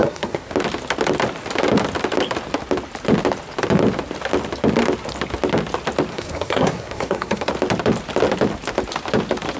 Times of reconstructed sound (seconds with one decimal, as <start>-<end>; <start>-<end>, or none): 0.0-0.5; 6.1-7.5

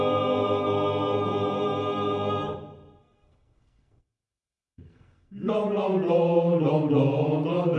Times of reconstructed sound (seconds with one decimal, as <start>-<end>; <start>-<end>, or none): 3.0-5.5